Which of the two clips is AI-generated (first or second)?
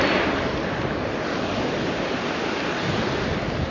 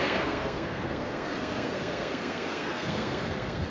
second